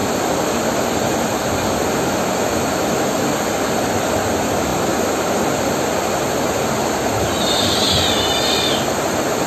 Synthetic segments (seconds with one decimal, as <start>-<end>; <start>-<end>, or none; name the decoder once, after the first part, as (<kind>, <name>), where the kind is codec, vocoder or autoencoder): 0.0-1.8 (vocoder, BigVGAN v2)